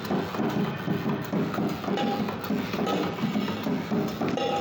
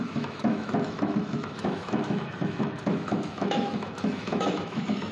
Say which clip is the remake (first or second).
second